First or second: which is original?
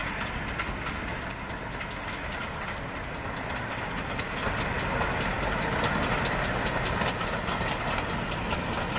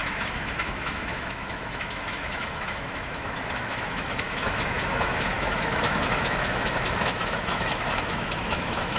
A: first